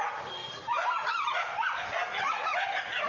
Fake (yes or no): no